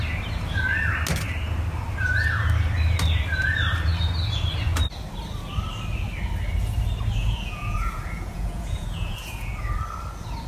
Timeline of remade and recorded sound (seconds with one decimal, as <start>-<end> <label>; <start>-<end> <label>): 0.0-7.2 recorded; 7.2-9.5 remade; 9.5-10.5 recorded